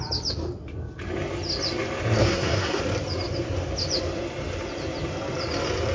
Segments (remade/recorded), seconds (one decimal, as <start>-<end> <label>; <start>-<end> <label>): 0.0-2.2 recorded; 2.2-2.8 remade; 2.8-5.9 recorded